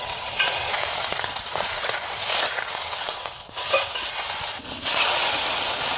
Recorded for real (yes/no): no